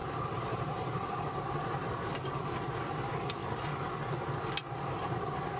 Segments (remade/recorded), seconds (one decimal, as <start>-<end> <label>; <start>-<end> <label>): 0.0-2.5 remade; 2.5-5.6 recorded